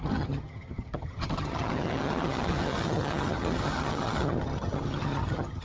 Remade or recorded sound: remade